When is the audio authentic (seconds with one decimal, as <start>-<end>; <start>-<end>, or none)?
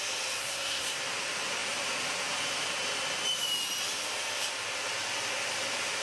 0.0-0.4; 1.0-6.0